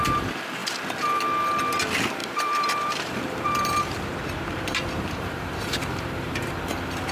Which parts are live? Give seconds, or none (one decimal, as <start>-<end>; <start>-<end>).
0.0-2.2; 6.5-7.1